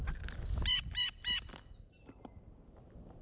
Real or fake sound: real